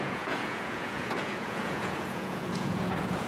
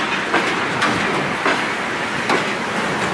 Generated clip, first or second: first